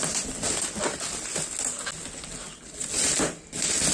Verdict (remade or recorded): recorded